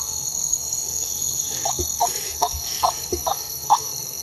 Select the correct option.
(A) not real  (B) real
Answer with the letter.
A